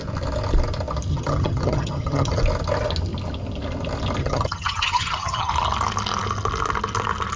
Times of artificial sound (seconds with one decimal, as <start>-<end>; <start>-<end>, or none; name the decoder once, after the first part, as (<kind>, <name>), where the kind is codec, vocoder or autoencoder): 1.1-2.4 (vocoder, HiFi-GAN); 4.2-5.5